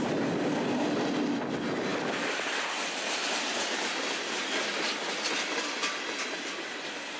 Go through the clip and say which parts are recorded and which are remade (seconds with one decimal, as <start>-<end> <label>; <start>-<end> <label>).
0.0-7.2 recorded